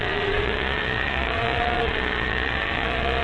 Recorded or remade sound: remade